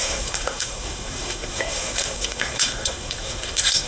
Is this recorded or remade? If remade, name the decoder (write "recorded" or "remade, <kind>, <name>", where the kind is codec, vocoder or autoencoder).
remade, codec, SNAC